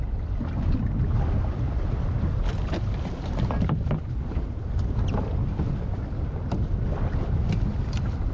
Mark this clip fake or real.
real